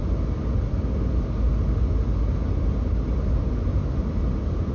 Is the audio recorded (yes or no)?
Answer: yes